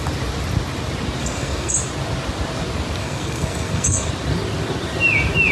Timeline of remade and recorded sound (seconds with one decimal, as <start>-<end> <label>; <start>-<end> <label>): 0.0-1.2 recorded; 1.2-1.7 remade; 1.7-3.0 recorded; 3.0-4.1 remade; 4.1-5.5 recorded